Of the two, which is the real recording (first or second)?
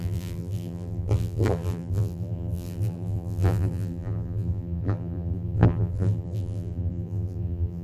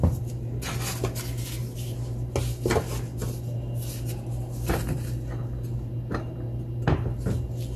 second